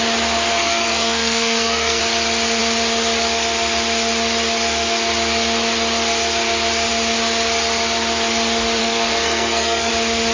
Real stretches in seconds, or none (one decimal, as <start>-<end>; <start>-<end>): 0.0-0.5; 2.0-8.8; 9.9-10.3